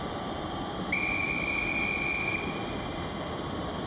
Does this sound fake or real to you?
real